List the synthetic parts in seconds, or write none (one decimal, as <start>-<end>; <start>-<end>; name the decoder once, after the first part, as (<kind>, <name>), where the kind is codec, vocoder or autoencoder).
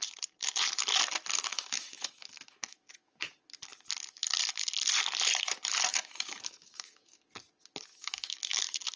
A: 1.5-3.3 (autoencoder, DAC-VAE); 5.9-7.2; 7.9-8.6